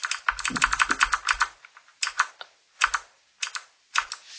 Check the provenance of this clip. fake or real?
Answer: real